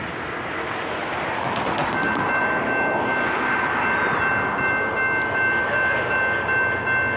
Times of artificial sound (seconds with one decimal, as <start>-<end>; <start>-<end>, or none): none